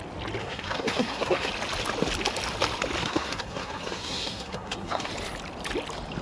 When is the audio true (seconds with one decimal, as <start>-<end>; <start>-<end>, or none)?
0.0-0.4; 1.5-3.0; 5.1-6.2